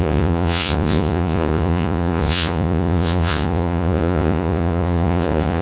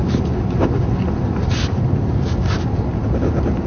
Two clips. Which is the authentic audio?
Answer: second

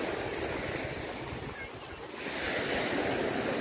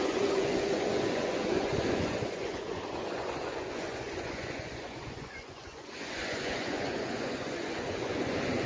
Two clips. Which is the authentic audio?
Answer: first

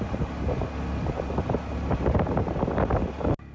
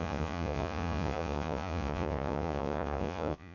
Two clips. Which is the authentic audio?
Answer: first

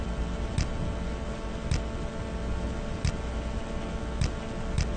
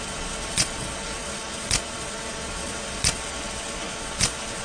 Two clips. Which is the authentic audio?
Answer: first